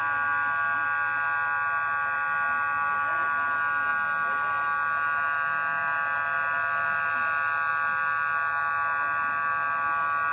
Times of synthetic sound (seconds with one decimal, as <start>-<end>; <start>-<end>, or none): none